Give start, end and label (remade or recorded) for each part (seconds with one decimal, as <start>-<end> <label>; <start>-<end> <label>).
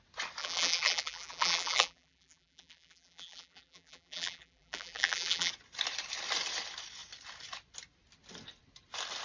0.0-0.4 recorded; 0.4-5.5 remade; 5.5-9.2 recorded